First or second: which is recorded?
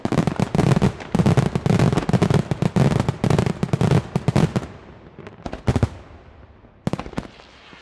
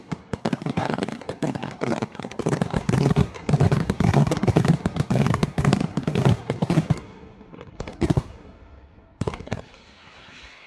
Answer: first